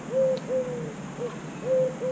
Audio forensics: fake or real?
real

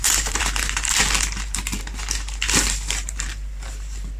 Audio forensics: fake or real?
fake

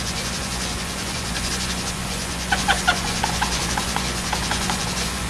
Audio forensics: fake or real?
fake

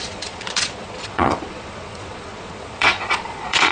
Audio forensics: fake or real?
fake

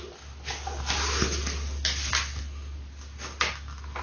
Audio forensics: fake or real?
real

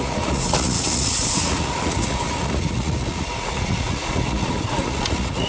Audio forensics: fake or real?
fake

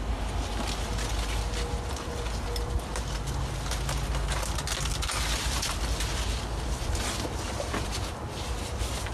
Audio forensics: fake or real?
real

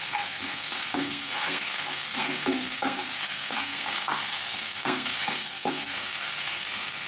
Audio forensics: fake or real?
fake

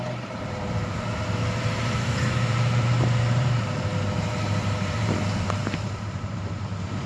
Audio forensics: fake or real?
fake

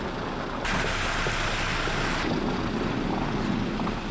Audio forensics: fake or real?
real